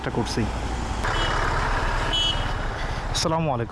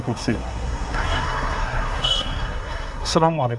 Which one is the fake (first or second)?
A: second